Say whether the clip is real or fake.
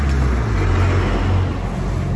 real